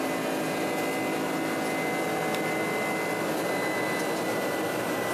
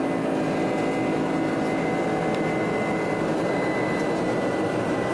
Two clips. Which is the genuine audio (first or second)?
first